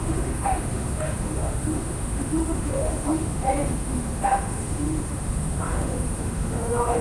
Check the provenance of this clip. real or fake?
fake